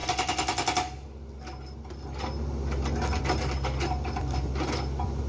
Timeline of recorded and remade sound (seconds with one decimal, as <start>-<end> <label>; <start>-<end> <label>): 0.0-5.3 recorded